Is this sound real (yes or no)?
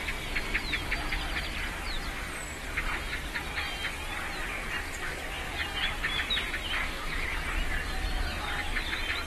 yes